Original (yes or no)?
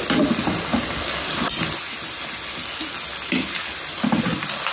yes